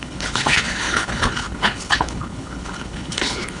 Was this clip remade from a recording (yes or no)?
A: yes